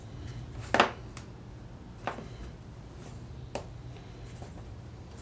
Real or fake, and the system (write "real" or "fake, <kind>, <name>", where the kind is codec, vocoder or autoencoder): real